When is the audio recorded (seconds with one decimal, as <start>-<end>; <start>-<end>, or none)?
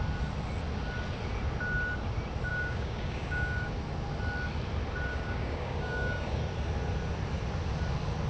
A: 0.0-2.5; 3.7-5.1; 6.4-8.3